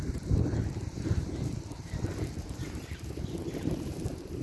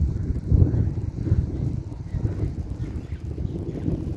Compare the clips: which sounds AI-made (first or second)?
first